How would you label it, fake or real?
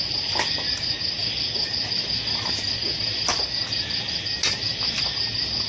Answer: real